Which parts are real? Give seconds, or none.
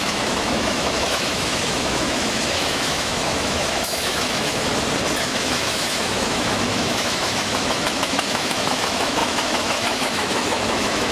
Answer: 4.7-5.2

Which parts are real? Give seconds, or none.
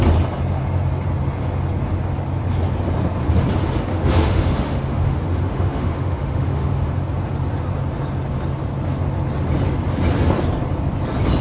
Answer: 0.0-3.9; 6.9-11.4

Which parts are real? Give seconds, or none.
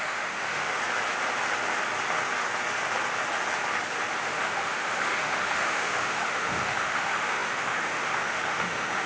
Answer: 0.8-4.2